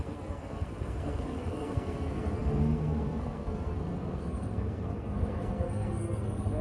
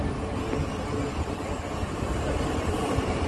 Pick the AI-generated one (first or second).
first